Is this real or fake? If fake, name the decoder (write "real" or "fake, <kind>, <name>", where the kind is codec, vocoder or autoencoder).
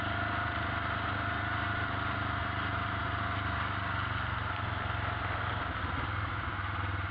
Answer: real